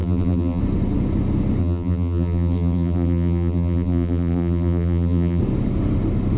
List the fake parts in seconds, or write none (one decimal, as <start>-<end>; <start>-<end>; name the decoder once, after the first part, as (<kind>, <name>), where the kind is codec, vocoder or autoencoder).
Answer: 0.0-0.6 (vocoder, BigVGAN v2); 1.6-5.4